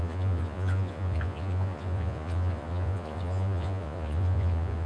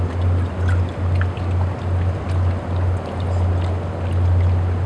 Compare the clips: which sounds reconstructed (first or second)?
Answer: first